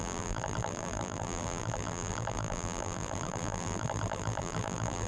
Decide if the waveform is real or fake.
fake